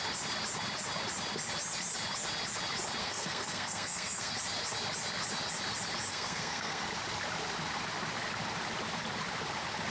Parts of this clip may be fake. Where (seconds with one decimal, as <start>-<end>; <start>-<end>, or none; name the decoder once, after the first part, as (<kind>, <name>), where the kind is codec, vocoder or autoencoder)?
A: 3.0-4.3 (codec, SNAC); 6.1-6.8